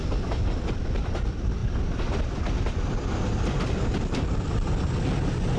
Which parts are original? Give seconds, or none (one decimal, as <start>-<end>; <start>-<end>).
0.0-1.6; 5.0-5.6